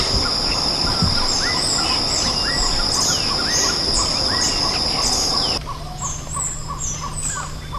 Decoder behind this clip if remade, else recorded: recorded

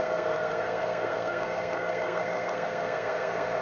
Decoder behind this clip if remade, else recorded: remade, codec, SNAC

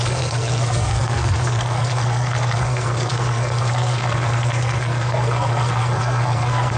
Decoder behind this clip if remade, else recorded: remade, codec, SNAC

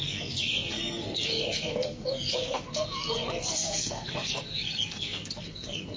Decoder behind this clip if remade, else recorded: remade, codec, SNAC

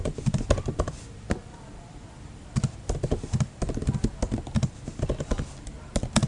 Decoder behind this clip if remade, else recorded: recorded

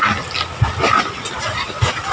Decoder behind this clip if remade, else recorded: recorded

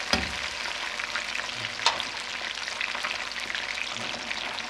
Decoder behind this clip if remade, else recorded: recorded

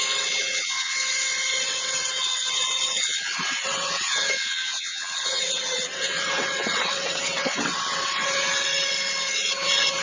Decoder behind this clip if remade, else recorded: remade, vocoder, WaveNeXt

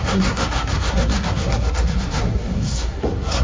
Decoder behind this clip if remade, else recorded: remade, codec, SNAC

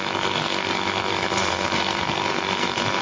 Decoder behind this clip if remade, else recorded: remade, codec, SNAC